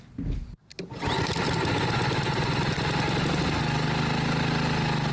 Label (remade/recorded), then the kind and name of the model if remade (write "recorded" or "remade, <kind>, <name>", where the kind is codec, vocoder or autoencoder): recorded